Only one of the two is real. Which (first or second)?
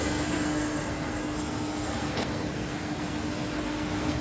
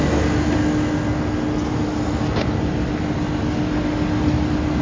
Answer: second